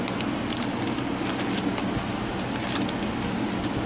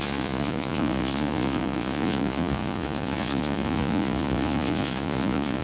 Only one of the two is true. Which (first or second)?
first